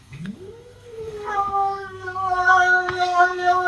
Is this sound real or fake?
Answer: fake